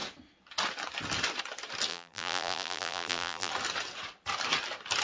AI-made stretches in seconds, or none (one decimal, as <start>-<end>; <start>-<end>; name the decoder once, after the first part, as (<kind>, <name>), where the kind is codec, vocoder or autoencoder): 1.9-3.5 (vocoder, BigVGAN v2)